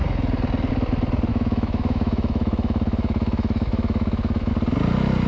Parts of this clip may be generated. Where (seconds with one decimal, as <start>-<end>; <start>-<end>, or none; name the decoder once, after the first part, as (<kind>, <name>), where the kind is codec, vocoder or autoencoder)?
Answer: 1.3-4.5 (autoencoder, DAC-VAE)